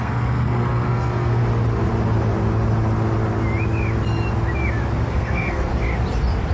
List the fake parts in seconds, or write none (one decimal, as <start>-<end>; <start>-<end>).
0.0-1.4; 5.1-5.7